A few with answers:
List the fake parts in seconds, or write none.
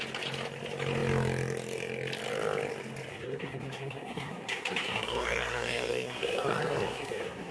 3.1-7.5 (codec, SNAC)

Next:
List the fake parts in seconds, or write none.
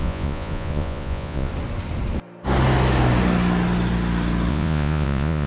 0.0-1.5 (vocoder, Vocos); 4.5-5.5